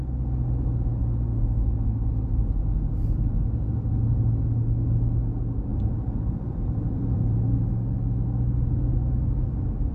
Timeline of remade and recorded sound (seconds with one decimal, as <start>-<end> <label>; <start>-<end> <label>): 0.0-5.7 recorded; 5.7-7.7 remade; 7.7-9.9 recorded